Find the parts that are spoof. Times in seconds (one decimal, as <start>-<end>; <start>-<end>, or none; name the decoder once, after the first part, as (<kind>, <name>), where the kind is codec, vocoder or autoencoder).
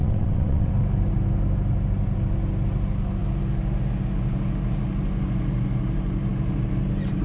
0.0-0.7 (vocoder, WaveNeXt)